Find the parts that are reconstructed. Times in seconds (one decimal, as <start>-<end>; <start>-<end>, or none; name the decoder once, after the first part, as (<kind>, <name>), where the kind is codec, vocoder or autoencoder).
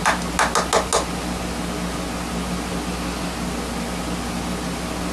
none